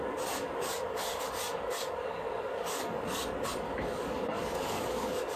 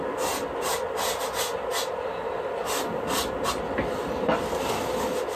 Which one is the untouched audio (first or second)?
second